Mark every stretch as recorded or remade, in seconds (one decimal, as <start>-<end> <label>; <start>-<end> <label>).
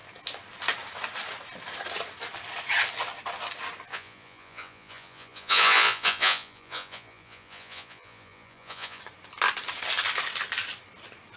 0.0-3.9 recorded; 3.9-9.0 remade; 9.0-11.4 recorded